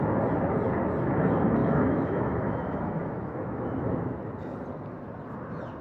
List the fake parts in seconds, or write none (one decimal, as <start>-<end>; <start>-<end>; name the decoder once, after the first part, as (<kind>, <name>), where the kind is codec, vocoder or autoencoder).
1.6-4.2 (autoencoder, DAC-VAE)